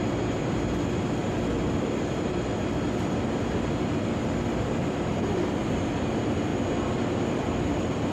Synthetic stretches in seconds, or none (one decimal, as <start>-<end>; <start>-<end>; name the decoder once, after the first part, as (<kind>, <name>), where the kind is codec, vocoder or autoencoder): none